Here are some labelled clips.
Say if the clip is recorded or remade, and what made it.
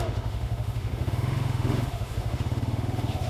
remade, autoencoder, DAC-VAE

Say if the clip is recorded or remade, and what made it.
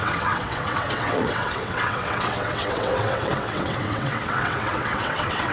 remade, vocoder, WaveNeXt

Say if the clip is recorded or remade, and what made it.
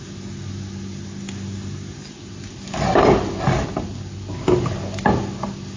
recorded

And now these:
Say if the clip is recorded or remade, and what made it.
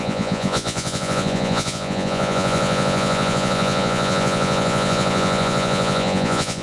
remade, vocoder, Vocos